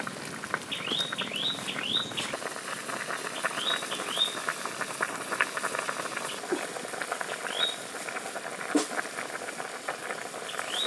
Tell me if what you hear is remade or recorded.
recorded